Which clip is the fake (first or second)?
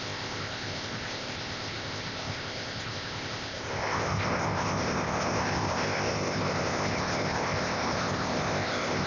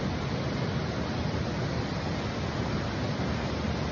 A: first